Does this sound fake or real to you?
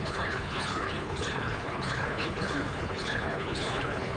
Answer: fake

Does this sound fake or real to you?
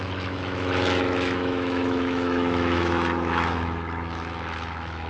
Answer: fake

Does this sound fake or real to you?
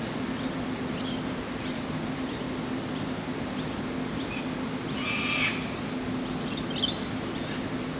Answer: real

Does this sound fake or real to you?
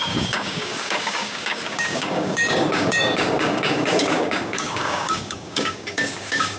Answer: fake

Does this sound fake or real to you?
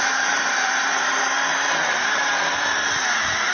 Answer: fake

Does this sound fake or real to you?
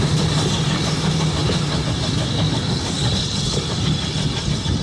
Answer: real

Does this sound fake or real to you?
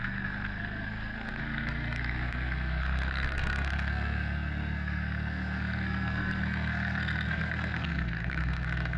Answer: fake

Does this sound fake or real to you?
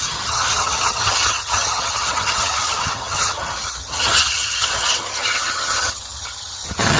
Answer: fake